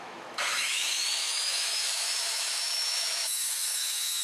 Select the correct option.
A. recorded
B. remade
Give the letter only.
B